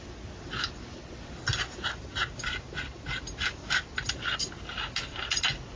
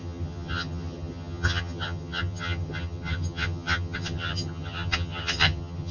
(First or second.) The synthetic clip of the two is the second